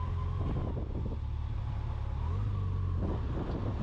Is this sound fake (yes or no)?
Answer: no